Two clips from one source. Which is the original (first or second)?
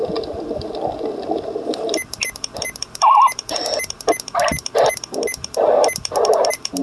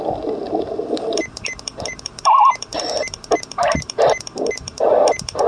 first